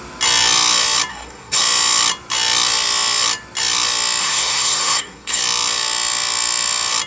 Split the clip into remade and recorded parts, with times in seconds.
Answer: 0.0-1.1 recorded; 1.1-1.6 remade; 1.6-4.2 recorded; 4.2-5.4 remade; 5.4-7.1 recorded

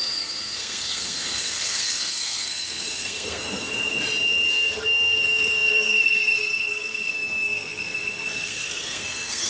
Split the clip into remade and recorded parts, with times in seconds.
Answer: 0.0-3.7 remade; 3.7-4.5 recorded; 4.5-9.5 remade